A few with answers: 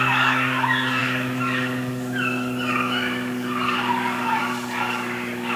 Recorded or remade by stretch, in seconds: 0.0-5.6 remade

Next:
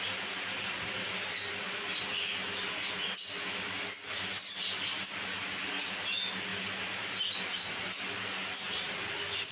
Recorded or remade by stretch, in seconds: 0.0-9.5 recorded

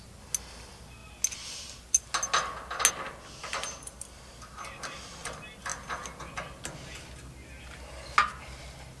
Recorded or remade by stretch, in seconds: 0.0-9.0 recorded

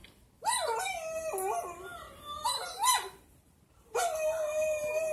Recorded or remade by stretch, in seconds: 0.0-5.1 recorded

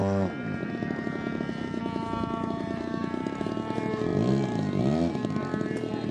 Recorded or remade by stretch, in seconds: 0.0-6.1 recorded

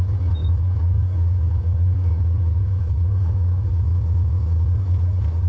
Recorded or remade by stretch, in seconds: 0.0-0.4 recorded; 0.4-3.7 remade; 3.7-5.5 recorded